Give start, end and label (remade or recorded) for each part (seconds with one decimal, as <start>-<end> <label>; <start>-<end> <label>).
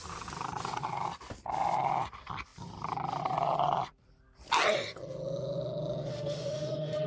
0.0-6.1 recorded; 6.1-7.1 remade